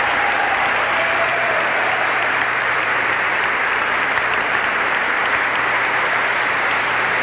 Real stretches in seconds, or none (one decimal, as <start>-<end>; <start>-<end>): none